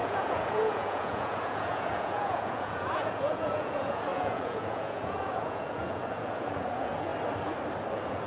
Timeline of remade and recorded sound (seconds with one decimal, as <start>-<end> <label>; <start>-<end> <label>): 0.0-7.1 remade; 7.1-7.9 recorded; 7.9-8.3 remade